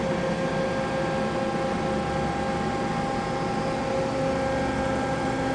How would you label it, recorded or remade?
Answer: recorded